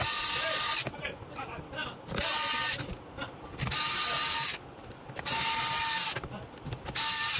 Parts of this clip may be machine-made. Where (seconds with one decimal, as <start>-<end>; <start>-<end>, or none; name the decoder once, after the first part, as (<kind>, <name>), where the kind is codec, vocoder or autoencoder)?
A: none